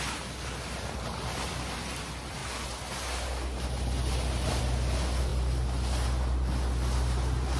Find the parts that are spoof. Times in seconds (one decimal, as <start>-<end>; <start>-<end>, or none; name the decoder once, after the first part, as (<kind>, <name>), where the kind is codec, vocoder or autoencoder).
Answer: none